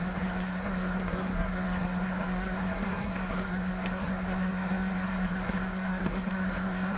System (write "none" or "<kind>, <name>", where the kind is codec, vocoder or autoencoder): codec, SNAC